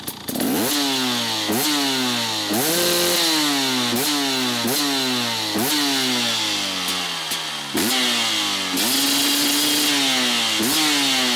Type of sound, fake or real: real